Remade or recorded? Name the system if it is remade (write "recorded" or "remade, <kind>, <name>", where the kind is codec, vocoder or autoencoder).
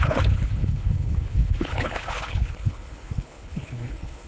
remade, codec, HILCodec